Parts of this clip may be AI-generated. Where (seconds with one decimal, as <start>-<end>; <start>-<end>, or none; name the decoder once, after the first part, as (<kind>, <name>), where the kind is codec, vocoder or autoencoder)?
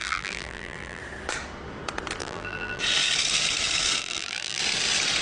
0.0-1.0 (vocoder, BigVGAN v2); 2.2-2.8; 4.0-4.6